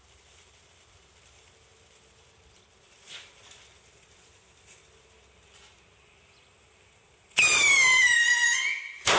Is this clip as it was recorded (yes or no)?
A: yes